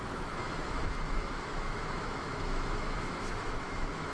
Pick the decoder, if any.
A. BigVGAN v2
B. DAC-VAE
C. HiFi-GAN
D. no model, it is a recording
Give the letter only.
B